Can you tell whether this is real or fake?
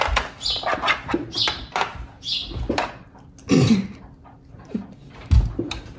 real